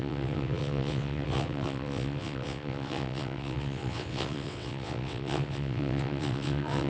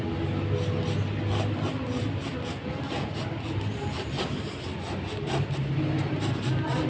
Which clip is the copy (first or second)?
first